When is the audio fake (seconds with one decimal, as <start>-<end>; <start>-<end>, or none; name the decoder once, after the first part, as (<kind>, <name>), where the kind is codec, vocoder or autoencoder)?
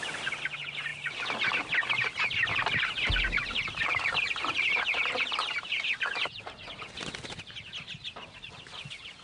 none